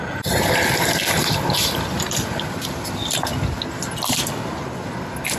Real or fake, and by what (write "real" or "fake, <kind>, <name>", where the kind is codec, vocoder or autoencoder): real